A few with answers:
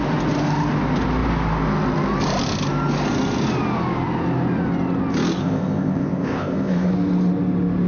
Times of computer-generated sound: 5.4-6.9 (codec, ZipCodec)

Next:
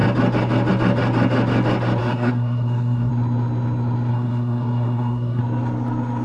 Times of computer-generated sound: 2.0-3.1 (codec, SNAC); 4.1-5.4

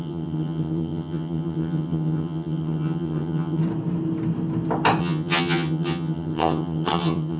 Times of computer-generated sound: 0.0-3.6 (vocoder, HiFi-GAN); 5.0-7.4

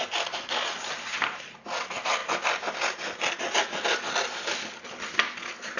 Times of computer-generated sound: none

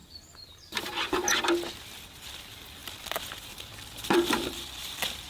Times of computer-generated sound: 0.0-5.3 (vocoder, BigVGAN v2)

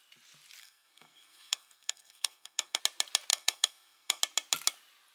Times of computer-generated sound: 0.6-2.8 (codec, SNAC); 3.3-4.2

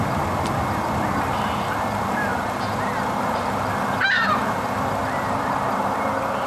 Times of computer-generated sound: 2.3-3.7 (vocoder, BigVGAN v2); 5.0-5.8